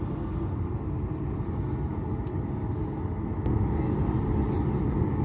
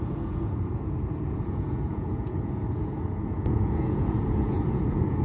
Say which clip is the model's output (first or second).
second